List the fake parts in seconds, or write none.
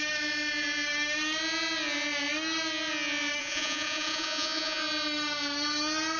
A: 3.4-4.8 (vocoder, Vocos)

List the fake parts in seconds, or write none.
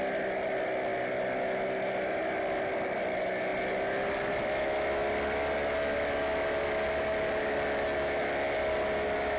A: none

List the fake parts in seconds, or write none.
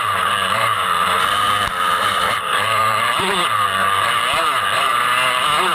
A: 0.0-4.9 (vocoder, BigVGAN v2)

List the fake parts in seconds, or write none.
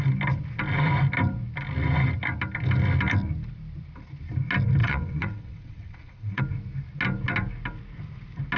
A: 4.8-6.4 (vocoder, WaveNeXt)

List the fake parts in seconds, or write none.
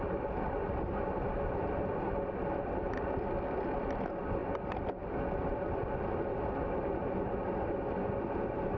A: none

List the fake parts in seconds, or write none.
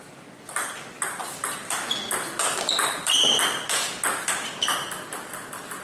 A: none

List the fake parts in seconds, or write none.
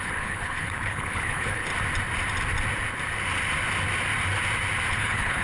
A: 0.0-1.7 (codec, HILCodec); 4.9-5.4